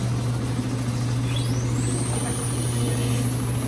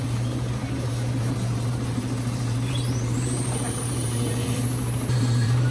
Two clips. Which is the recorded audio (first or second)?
first